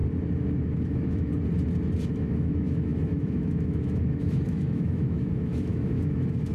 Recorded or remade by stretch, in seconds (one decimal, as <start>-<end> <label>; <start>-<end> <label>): 0.0-0.9 recorded; 0.9-1.3 remade; 1.3-2.1 recorded; 2.1-6.5 remade

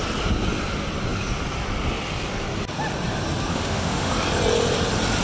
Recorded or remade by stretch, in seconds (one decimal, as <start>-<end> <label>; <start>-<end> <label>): 0.0-3.5 recorded; 3.5-4.1 remade; 4.1-5.2 recorded

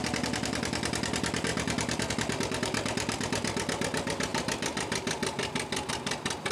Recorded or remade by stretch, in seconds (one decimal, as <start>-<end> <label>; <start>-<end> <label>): 0.0-6.5 recorded

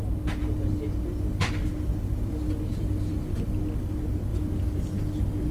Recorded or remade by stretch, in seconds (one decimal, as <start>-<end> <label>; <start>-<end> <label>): 0.0-5.5 recorded

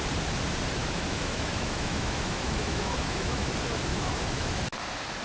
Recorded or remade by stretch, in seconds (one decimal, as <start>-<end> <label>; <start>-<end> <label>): 0.0-0.8 recorded; 0.8-3.5 remade; 3.5-3.9 recorded; 3.9-4.6 remade; 4.6-5.2 recorded

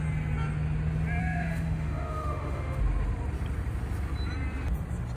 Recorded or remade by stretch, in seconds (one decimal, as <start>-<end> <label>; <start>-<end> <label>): 0.0-1.2 recorded; 1.2-2.8 remade; 2.8-5.2 recorded

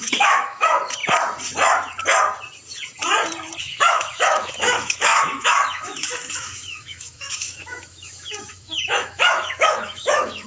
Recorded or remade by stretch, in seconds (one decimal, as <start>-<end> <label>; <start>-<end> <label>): 0.0-1.0 remade; 1.0-3.6 recorded; 3.6-10.5 remade

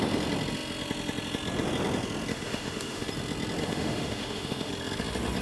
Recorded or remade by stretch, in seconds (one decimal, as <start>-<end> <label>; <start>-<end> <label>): 0.0-2.3 recorded; 2.3-3.1 remade; 3.1-3.6 recorded; 3.6-4.7 remade; 4.7-5.4 recorded